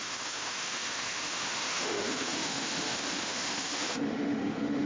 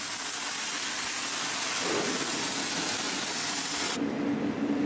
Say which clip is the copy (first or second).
first